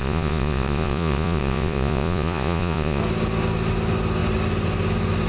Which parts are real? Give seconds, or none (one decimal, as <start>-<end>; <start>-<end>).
3.0-5.3